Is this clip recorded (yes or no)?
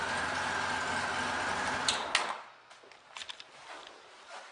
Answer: yes